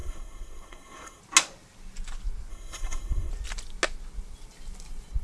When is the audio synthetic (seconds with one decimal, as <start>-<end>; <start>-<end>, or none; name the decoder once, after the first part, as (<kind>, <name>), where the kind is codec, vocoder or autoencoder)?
0.0-1.2 (codec, SNAC); 2.5-3.3